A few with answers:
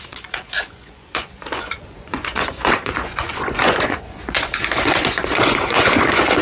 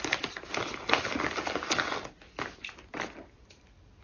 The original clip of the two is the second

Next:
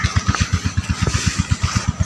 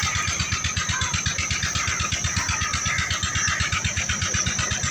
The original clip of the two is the first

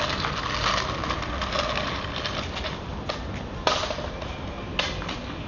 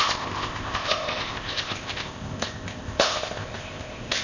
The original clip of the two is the first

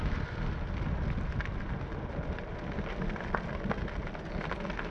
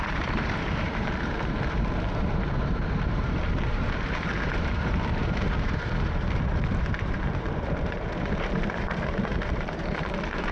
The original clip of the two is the first